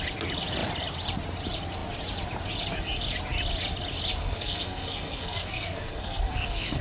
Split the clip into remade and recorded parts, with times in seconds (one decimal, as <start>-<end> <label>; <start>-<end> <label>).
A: 0.0-4.2 recorded; 4.2-6.8 remade